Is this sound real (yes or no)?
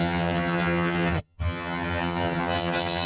no